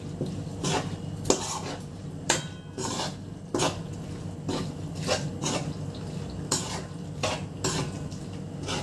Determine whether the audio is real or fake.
real